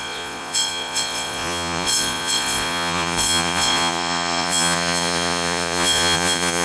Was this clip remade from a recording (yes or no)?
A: yes